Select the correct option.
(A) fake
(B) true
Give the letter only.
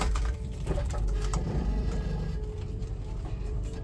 A